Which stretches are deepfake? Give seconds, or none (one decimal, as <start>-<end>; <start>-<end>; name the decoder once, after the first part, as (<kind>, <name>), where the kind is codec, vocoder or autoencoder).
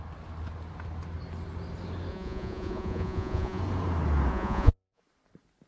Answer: 2.1-3.6 (vocoder, Vocos); 4.3-5.0